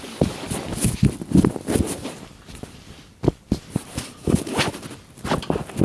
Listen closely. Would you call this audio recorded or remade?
remade